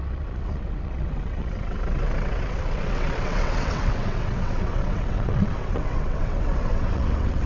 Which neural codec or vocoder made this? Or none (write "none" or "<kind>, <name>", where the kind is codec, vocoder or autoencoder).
vocoder, WaveNeXt